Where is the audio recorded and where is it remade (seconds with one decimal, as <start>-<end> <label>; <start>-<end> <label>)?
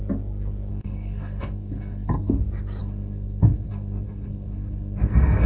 0.0-0.7 recorded; 0.7-2.4 remade; 2.4-2.8 recorded; 2.8-5.5 remade